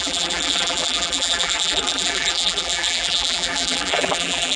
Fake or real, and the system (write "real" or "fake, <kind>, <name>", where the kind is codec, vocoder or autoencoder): fake, vocoder, BigVGAN v2